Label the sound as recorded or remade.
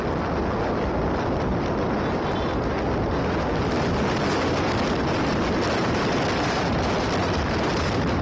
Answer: recorded